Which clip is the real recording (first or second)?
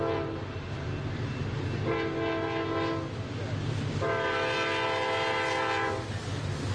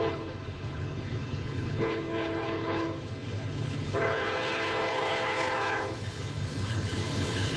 first